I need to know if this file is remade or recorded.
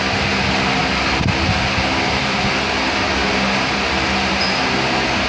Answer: recorded